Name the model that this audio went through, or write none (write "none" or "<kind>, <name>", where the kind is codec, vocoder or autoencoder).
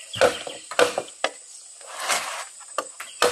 none